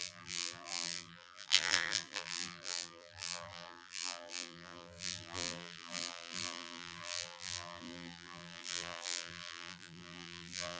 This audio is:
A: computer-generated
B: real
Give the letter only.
A